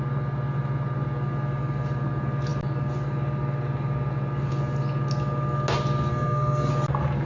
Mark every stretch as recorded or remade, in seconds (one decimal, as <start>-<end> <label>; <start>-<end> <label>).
0.0-6.1 recorded; 6.1-6.7 remade; 6.7-7.3 recorded